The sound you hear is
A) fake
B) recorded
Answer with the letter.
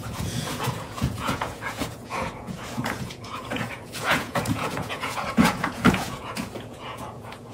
A